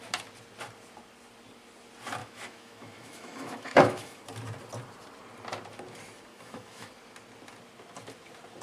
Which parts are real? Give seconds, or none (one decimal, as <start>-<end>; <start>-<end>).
0.0-2.2; 4.2-6.3; 6.9-8.6